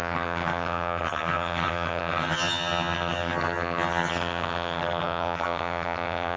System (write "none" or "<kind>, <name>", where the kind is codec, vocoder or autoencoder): vocoder, HiFi-GAN